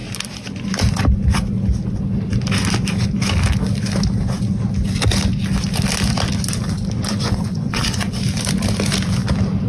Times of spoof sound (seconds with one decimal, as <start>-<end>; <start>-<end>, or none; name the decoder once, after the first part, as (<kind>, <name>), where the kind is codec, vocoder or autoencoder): 7.1-8.2 (vocoder, Vocos)